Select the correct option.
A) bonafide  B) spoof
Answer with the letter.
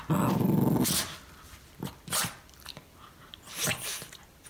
A